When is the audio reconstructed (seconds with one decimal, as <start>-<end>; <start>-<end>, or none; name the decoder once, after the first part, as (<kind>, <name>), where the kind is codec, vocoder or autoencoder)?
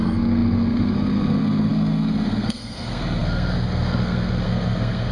0.0-5.1 (codec, SNAC)